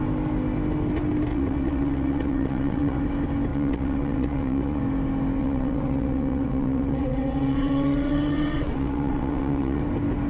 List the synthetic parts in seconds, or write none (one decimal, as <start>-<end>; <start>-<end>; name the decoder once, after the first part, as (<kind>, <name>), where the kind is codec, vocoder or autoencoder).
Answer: 1.3-3.0 (vocoder, WaveNeXt); 3.5-4.8; 5.4-9.8